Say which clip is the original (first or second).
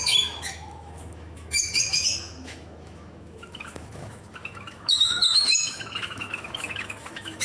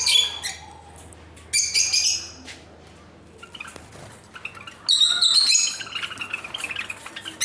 second